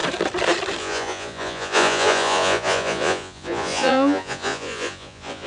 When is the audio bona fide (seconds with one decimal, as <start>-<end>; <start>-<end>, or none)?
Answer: 0.0-0.8